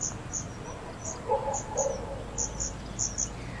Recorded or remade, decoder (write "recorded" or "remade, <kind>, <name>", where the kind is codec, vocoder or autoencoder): recorded